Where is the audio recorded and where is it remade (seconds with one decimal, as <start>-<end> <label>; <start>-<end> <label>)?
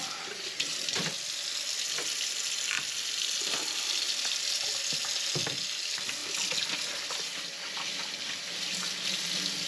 0.0-9.7 recorded